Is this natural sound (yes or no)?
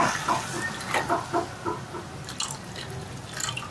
yes